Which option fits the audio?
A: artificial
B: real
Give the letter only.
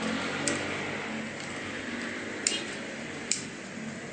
B